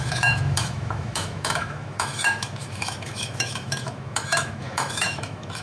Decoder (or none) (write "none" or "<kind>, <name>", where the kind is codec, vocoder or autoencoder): autoencoder, DAC-VAE